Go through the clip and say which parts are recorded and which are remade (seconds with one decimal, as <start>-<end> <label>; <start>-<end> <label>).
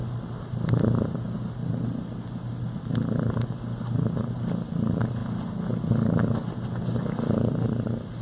0.0-8.2 recorded